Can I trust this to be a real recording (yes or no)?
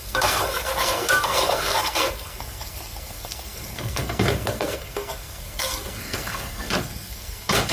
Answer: no